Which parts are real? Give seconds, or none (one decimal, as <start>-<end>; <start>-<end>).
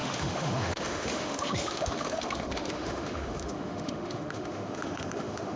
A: none